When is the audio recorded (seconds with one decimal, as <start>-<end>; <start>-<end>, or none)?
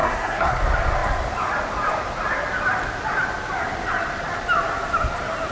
0.6-5.5